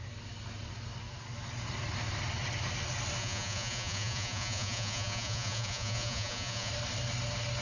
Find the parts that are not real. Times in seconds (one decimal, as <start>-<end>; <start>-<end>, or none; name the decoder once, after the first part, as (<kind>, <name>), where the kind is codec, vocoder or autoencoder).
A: 3.2-6.7 (vocoder, Vocos)